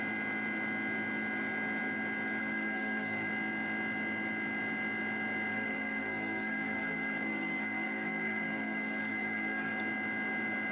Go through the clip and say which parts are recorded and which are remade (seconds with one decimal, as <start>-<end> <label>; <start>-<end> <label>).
0.0-2.4 recorded; 2.4-3.3 remade; 3.3-5.5 recorded; 5.5-9.7 remade; 9.7-10.7 recorded